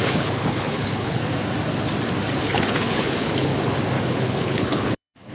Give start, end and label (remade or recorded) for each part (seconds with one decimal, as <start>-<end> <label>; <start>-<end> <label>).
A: 0.0-1.2 remade; 1.2-2.4 recorded; 2.4-3.5 remade; 3.5-4.1 recorded; 4.1-5.3 remade